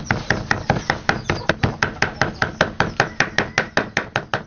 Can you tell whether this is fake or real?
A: real